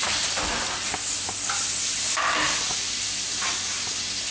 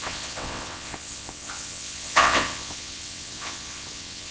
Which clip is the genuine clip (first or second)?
first